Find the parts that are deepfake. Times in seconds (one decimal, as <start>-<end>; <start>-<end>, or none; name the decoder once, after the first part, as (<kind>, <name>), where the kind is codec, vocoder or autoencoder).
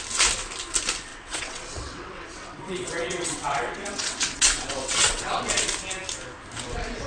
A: 1.1-5.4 (vocoder, WaveNeXt)